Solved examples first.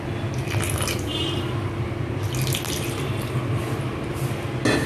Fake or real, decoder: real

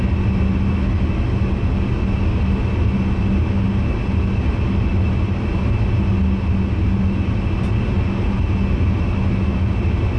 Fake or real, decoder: real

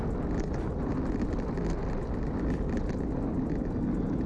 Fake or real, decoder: real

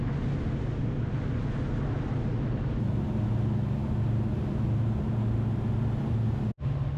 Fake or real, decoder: real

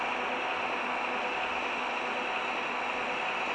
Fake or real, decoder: real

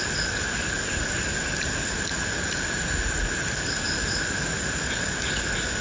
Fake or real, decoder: real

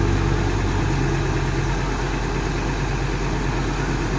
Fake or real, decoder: real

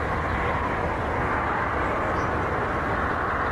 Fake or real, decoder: fake, vocoder, BigVGAN v2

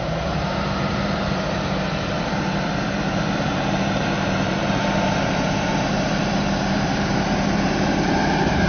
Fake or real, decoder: fake, vocoder, BigVGAN v2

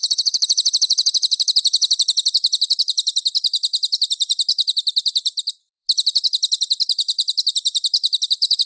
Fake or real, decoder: fake, vocoder, BigVGAN v2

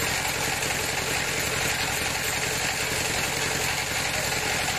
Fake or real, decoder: real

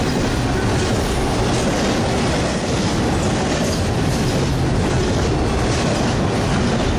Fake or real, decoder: real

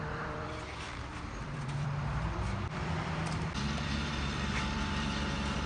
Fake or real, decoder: fake, vocoder, BigVGAN v2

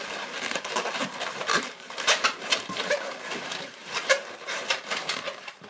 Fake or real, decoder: fake, vocoder, BigVGAN v2